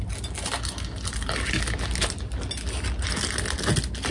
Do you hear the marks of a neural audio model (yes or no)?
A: no